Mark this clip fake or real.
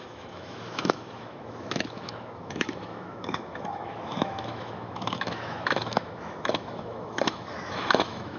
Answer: fake